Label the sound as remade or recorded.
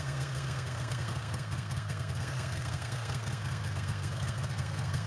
remade